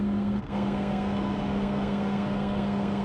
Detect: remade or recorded remade